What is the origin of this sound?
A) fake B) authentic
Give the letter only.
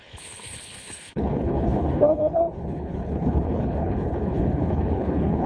A